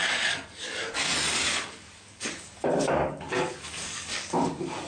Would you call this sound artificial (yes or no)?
yes